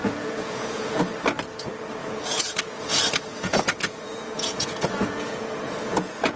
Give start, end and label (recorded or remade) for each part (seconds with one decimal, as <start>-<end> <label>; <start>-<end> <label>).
0.0-1.0 remade; 1.0-2.0 recorded; 2.0-2.9 remade; 2.9-3.3 recorded; 3.3-6.4 remade